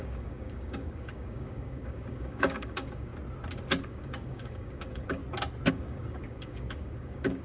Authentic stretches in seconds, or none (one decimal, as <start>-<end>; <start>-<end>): 3.1-3.8; 5.2-5.7